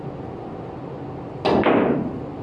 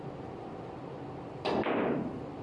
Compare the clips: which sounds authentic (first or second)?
first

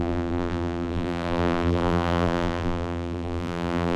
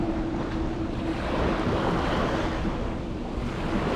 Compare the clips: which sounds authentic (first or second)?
second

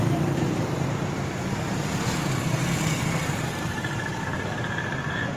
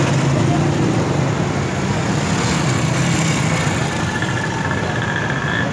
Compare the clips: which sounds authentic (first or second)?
second